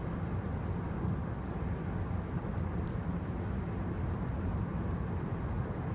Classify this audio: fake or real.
real